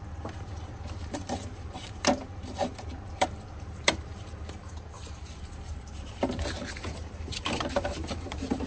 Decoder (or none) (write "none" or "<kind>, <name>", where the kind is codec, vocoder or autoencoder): vocoder, BigVGAN v2